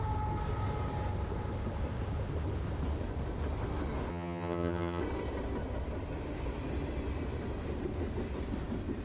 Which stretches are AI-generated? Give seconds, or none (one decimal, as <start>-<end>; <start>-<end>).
4.1-5.0